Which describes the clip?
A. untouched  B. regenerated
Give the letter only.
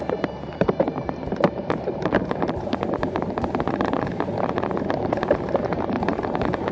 B